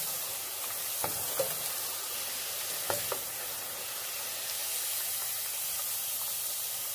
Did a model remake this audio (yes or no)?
no